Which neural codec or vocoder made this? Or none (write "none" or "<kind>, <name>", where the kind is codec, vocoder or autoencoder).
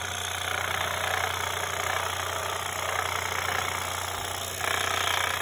none